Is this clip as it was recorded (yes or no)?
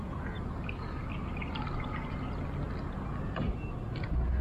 yes